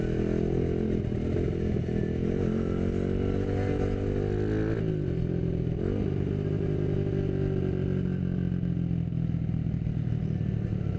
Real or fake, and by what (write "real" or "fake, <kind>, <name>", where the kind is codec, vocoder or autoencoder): real